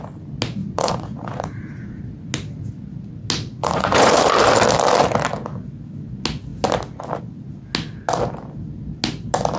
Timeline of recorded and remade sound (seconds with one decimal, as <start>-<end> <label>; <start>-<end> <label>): 0.0-0.6 recorded; 0.6-2.0 remade; 2.0-3.6 recorded; 3.6-4.1 remade; 4.1-9.6 recorded